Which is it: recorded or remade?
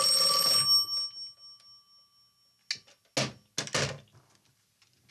recorded